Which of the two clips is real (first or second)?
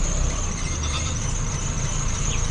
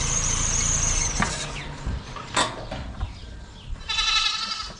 second